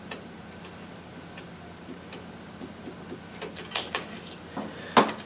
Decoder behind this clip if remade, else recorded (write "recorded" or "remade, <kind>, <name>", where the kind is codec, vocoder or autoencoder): recorded